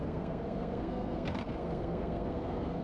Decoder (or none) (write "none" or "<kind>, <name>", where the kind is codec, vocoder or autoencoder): codec, SNAC